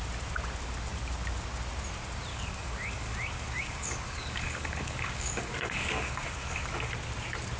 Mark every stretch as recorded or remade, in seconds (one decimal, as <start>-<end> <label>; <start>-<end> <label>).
0.0-2.3 recorded; 2.3-6.9 remade; 6.9-7.6 recorded